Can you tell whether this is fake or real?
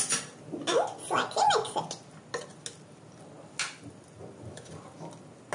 real